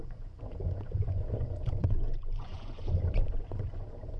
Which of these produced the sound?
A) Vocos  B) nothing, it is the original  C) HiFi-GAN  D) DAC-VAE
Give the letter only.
A